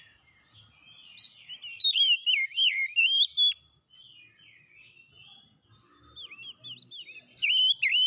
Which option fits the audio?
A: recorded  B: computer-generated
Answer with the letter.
A